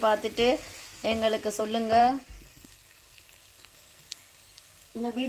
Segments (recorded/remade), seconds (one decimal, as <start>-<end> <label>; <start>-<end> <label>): 0.0-2.0 recorded; 2.0-5.3 remade